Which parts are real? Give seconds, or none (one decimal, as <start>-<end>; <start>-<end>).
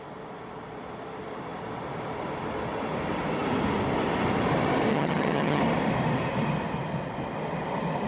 0.0-4.9; 5.6-8.1